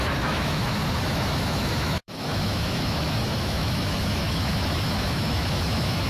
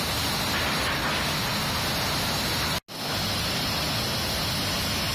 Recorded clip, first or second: second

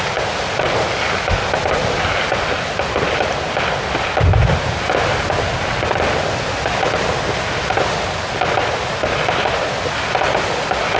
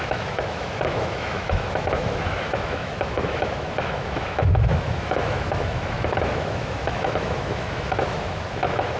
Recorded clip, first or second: first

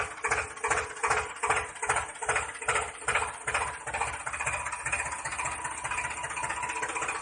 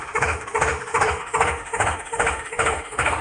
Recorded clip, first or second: first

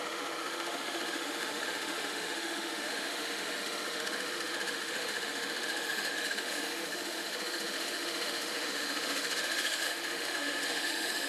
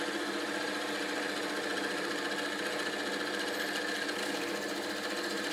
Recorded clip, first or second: second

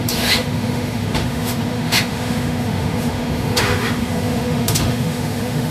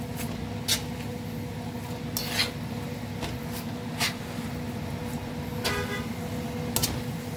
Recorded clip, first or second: second